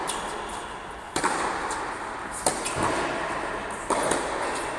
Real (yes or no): yes